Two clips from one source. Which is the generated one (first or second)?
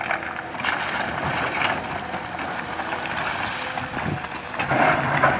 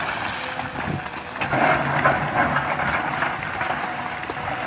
first